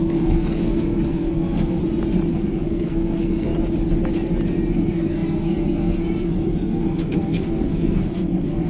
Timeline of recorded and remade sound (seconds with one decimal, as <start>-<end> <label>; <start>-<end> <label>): 0.0-1.8 remade; 1.8-2.3 recorded; 2.3-3.5 remade; 3.5-4.7 recorded; 4.7-8.7 remade